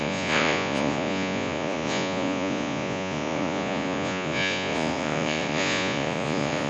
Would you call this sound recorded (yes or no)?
no